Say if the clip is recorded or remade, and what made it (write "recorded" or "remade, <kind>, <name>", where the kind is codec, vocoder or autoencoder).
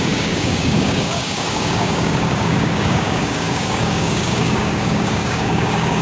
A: remade, codec, DAC